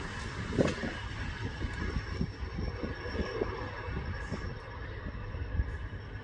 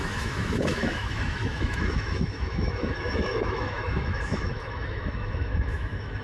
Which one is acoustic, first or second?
first